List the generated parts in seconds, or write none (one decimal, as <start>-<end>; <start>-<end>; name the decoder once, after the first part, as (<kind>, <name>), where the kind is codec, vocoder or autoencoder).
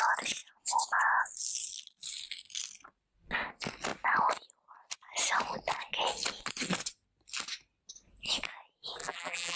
9.0-9.6 (vocoder, BigVGAN v2)